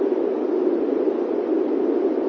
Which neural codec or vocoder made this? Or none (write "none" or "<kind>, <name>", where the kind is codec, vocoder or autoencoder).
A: none